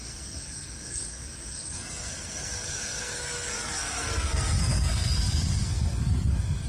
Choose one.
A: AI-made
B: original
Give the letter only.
A